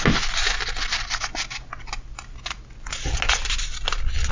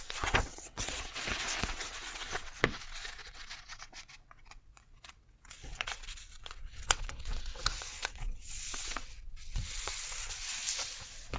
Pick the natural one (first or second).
first